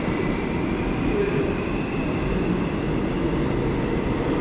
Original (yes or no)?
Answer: yes